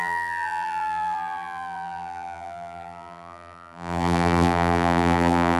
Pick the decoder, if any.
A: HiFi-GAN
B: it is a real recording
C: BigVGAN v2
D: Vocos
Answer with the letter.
C